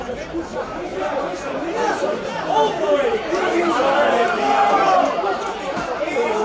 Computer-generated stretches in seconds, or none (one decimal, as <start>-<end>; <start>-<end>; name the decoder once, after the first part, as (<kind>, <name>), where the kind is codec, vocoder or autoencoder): 0.0-6.4 (vocoder, BigVGAN v2)